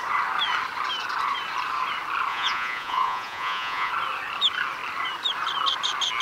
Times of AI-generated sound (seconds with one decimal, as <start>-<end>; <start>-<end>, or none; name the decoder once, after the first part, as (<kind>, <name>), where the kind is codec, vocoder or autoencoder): 2.3-3.9 (vocoder, Vocos)